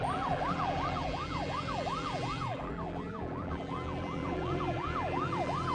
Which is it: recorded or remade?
remade